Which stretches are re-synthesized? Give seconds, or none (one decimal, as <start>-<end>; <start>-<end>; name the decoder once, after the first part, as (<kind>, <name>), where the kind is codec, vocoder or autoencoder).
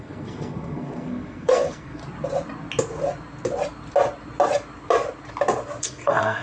0.0-2.0 (codec, SNAC); 5.8-6.4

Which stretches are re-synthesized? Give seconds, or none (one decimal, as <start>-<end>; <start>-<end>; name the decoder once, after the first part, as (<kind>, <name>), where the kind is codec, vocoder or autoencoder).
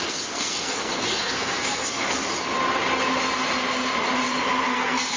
0.0-2.2 (codec, SNAC); 4.7-5.2